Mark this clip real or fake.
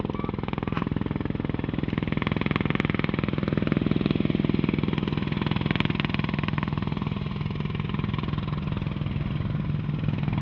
real